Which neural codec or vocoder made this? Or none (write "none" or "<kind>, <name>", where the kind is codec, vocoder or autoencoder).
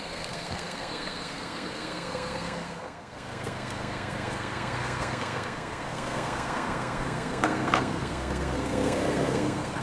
codec, SNAC